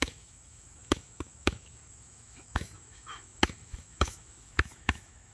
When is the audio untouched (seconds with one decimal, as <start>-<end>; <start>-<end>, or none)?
none